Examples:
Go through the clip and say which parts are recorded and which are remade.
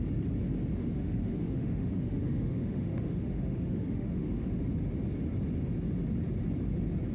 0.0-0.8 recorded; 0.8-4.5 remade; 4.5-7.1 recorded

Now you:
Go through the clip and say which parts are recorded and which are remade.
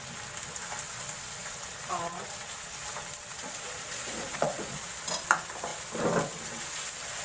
0.0-1.4 recorded; 1.4-2.7 remade; 2.7-3.3 recorded; 3.3-4.9 remade; 4.9-7.2 recorded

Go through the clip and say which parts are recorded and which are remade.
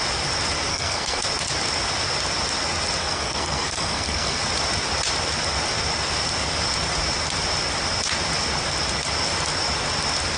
0.0-0.7 recorded; 0.7-1.2 remade; 1.2-3.0 recorded; 3.0-4.4 remade; 4.4-10.4 recorded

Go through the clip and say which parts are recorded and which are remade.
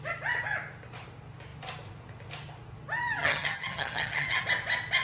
0.0-3.2 recorded; 3.2-4.4 remade; 4.4-5.0 recorded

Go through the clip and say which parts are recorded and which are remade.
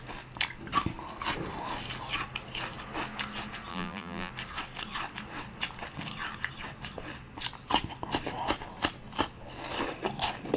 0.0-3.7 recorded; 3.7-4.3 remade; 4.3-10.6 recorded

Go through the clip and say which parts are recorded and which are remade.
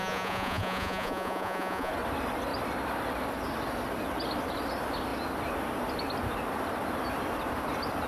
0.0-1.9 remade; 1.9-8.1 recorded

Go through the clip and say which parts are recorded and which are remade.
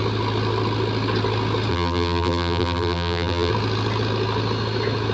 0.0-1.7 recorded; 1.7-3.5 remade; 3.5-5.1 recorded